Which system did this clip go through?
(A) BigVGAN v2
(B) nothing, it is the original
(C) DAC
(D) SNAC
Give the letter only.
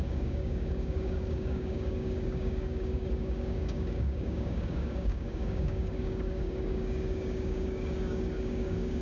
C